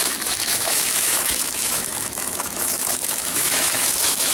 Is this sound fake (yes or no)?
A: yes